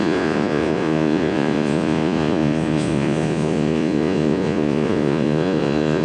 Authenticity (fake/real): fake